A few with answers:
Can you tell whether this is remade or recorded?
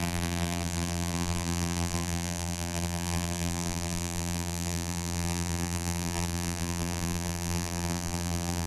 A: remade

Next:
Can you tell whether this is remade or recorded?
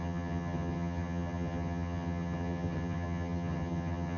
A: remade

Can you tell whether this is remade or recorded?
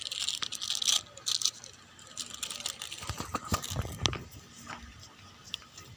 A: recorded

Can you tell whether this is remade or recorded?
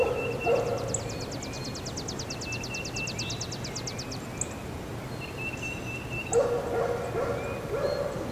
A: recorded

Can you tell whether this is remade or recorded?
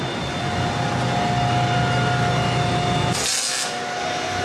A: recorded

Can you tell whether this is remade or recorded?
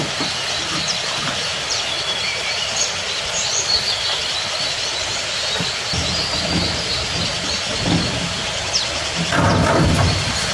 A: remade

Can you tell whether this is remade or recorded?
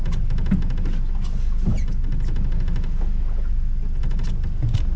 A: recorded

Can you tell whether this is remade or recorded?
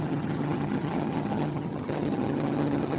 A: remade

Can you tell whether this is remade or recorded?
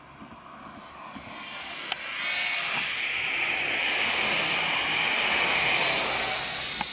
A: recorded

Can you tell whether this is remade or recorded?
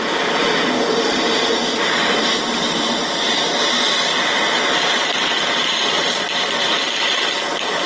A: recorded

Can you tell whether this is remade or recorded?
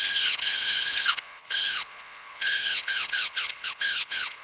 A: remade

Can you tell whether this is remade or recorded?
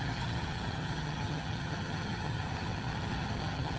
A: remade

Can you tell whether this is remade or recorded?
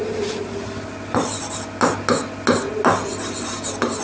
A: recorded